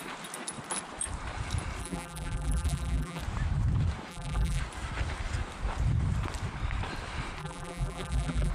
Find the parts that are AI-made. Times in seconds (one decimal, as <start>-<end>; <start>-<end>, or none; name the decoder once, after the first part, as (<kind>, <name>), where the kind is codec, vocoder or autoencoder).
1.8-3.2 (vocoder, BigVGAN v2); 4.1-4.6; 7.4-8.5

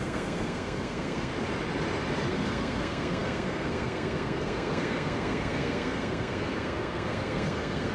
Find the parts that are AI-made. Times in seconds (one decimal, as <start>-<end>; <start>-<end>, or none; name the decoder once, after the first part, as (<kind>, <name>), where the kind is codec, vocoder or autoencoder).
0.0-1.3 (codec, SNAC); 2.3-7.9

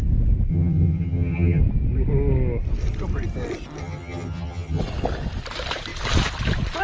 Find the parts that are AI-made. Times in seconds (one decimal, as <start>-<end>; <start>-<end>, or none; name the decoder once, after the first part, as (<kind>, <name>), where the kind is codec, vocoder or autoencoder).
0.5-1.6 (vocoder, HiFi-GAN); 3.8-4.8

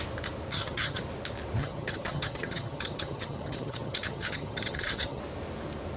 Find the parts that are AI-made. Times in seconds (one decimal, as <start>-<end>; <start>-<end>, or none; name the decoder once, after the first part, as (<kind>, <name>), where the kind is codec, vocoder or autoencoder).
0.5-1.0 (vocoder, HiFi-GAN); 1.6-5.2